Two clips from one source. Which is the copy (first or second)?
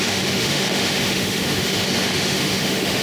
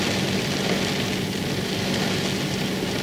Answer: first